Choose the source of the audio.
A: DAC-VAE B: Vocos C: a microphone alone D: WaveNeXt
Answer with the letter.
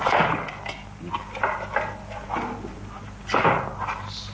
C